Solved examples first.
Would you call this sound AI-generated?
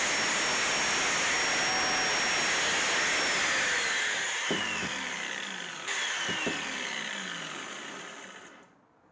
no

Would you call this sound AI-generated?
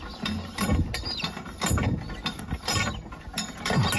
no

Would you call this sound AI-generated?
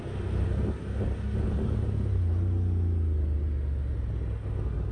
no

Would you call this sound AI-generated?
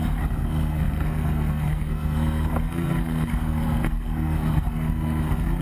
yes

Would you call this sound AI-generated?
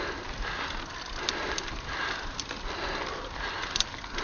no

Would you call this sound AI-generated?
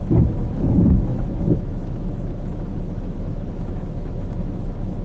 yes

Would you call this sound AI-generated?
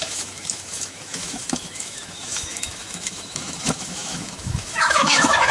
yes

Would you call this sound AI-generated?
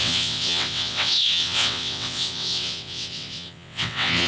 yes